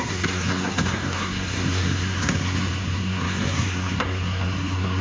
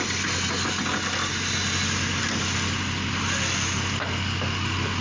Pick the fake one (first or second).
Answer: first